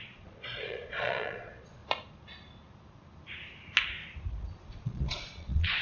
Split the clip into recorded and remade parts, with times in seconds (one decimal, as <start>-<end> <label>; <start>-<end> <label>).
0.0-1.8 remade; 1.8-4.7 recorded; 4.7-5.8 remade